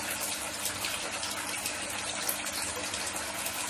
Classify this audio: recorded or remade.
recorded